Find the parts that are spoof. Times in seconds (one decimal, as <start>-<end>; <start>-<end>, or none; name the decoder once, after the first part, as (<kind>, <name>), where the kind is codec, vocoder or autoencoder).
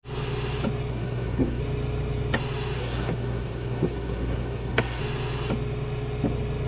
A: 0.9-1.6 (codec, SNAC); 2.8-5.0